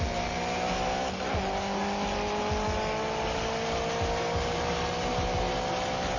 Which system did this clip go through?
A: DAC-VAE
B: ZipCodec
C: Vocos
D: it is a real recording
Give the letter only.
D